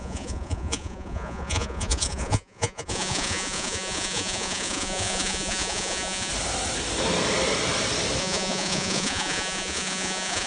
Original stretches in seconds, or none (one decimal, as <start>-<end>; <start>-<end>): 6.3-8.2